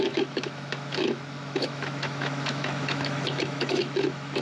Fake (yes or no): yes